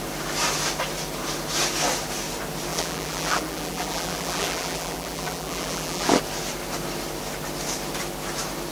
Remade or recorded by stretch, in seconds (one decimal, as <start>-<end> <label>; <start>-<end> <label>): 0.0-2.7 recorded; 2.7-6.2 remade; 6.2-8.7 recorded